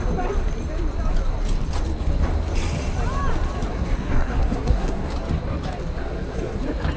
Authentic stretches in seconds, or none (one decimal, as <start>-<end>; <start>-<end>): 0.0-3.7; 5.1-6.0; 6.6-7.0